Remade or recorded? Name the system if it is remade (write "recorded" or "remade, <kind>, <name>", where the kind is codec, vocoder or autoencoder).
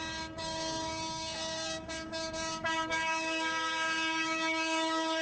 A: remade, codec, DAC